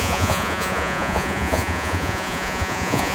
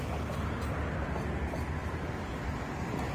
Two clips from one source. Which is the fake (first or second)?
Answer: first